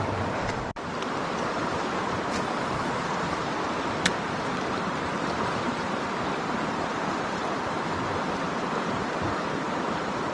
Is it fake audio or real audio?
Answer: fake